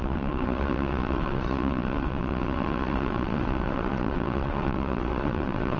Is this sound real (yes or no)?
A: no